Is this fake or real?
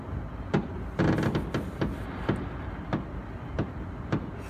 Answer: real